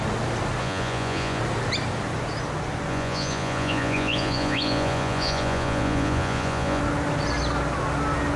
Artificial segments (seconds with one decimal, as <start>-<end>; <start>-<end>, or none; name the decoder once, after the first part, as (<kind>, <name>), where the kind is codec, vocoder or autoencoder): 0.6-1.4 (vocoder, Vocos); 2.9-6.8